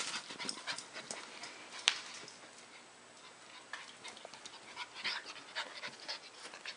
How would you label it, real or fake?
real